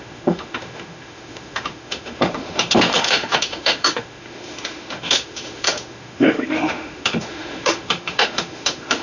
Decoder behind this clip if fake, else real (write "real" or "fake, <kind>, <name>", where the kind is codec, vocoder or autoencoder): fake, autoencoder, DAC-VAE